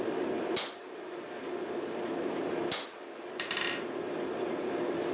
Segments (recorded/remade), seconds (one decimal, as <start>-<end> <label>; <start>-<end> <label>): 0.0-5.1 recorded